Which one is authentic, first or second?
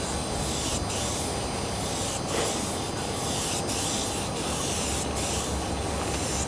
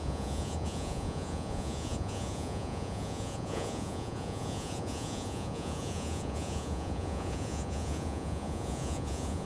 first